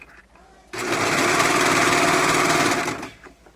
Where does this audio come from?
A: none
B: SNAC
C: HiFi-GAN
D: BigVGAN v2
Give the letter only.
A